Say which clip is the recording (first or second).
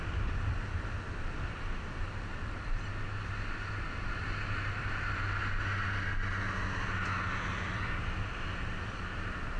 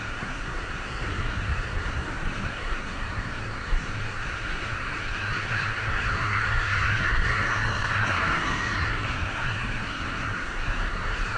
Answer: first